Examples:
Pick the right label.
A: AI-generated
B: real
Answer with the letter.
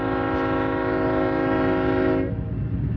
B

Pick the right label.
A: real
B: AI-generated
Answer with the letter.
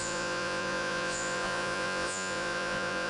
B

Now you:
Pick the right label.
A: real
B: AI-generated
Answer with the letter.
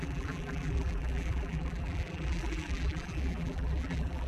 B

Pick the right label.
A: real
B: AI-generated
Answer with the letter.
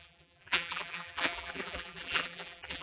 B